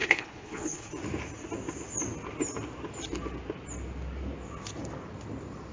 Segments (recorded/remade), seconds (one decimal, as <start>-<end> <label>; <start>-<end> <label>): 0.0-0.9 remade; 0.9-5.7 recorded

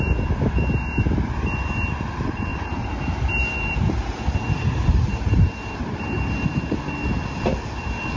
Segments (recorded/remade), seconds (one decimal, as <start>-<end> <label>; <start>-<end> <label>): 0.0-2.5 recorded; 2.5-6.8 remade; 6.8-8.2 recorded

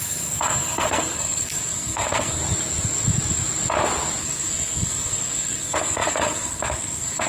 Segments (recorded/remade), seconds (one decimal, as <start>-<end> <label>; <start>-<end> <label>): 0.0-2.4 remade; 2.4-4.2 recorded; 4.2-7.3 remade